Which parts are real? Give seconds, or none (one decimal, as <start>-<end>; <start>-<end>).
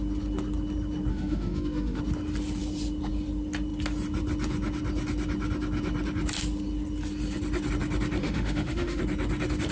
0.0-1.1; 2.0-8.2; 9.0-9.7